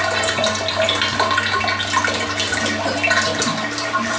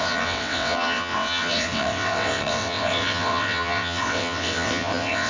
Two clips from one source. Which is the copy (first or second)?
second